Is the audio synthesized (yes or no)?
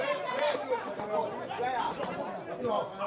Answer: no